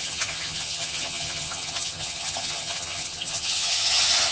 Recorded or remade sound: remade